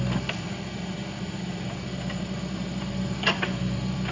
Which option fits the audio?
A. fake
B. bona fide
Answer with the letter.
B